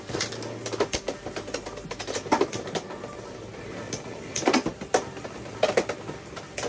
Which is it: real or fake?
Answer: real